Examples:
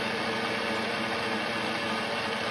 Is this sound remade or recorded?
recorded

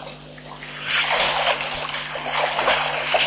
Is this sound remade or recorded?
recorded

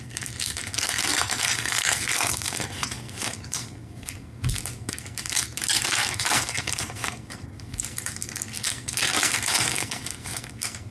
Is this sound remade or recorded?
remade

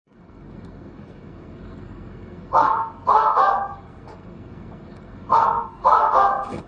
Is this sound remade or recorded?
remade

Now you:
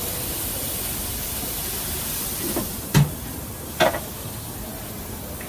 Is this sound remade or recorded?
recorded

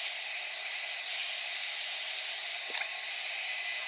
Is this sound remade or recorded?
recorded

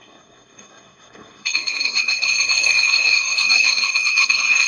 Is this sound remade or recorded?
remade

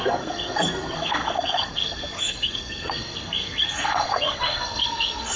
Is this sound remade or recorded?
remade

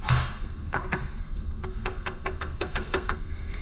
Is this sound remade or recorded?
remade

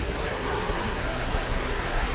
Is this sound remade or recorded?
remade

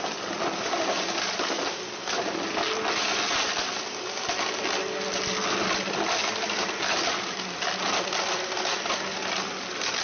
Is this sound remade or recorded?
recorded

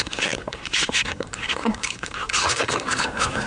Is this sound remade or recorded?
remade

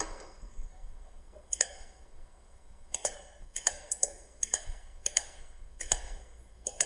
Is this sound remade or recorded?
remade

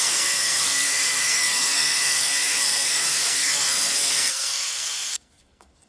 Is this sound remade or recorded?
remade